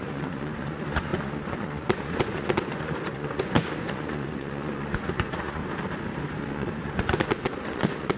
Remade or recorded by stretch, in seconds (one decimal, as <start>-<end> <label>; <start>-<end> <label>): 0.0-5.6 remade; 5.6-6.4 recorded; 6.4-8.2 remade